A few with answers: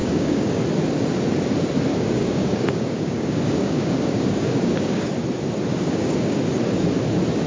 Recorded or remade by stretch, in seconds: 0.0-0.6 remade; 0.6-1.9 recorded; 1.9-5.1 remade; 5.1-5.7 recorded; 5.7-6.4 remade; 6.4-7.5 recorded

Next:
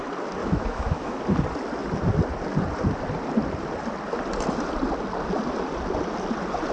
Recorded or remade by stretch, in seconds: 0.0-0.4 recorded; 0.4-1.2 remade; 1.2-6.7 recorded

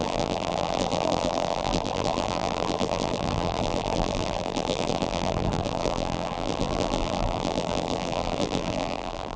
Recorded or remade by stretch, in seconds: 0.0-9.4 remade

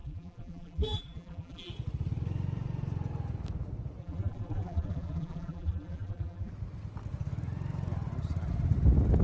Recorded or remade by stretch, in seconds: 0.0-1.7 remade; 1.7-4.0 recorded; 4.0-6.5 remade; 6.5-9.2 recorded

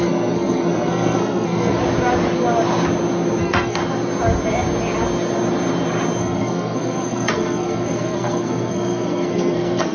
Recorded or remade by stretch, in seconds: 0.0-1.8 remade; 1.8-3.4 recorded; 3.4-3.8 remade; 3.8-6.2 recorded; 6.2-9.9 remade

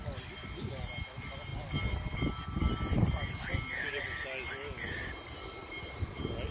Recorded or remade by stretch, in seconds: 0.0-6.5 recorded

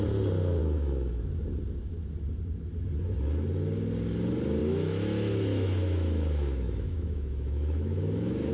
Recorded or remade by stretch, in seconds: 0.0-0.6 recorded; 0.6-1.4 remade; 1.4-4.6 recorded; 4.6-8.5 remade